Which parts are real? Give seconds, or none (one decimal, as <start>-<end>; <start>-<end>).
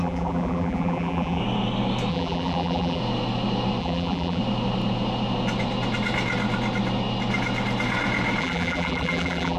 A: 1.4-2.1; 3.0-3.8; 4.4-8.4